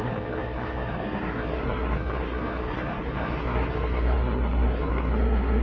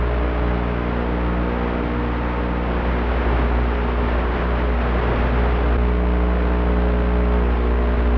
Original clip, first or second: second